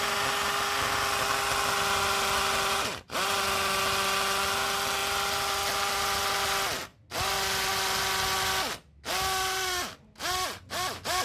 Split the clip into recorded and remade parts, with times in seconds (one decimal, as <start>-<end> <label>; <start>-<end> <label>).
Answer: 0.0-11.2 recorded

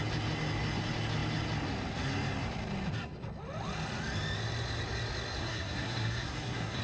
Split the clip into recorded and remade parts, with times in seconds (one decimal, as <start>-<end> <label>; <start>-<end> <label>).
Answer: 0.0-5.4 recorded; 5.4-6.8 remade

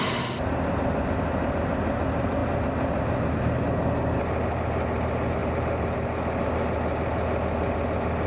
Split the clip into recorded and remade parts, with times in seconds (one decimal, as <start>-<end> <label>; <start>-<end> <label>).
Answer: 0.0-8.3 recorded

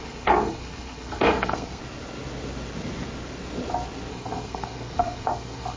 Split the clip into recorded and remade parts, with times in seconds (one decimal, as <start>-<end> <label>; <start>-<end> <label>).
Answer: 0.0-1.8 remade; 1.8-4.1 recorded; 4.1-5.8 remade

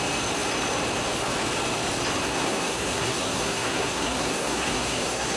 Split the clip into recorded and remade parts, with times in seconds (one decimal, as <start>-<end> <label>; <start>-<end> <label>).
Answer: 0.0-2.2 recorded; 2.2-5.4 remade

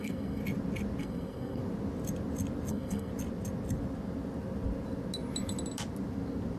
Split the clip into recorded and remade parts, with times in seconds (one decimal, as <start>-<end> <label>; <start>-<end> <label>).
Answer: 0.0-0.4 remade; 0.4-1.0 recorded; 1.0-1.6 remade; 1.6-2.7 recorded; 2.7-3.1 remade; 3.1-6.6 recorded